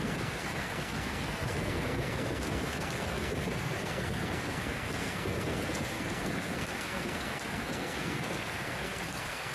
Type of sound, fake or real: fake